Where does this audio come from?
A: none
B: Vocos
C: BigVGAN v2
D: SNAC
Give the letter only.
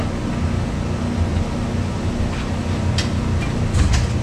A